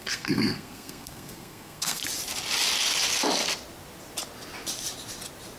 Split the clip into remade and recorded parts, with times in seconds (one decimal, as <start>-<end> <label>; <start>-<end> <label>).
0.0-2.0 remade; 2.0-5.6 recorded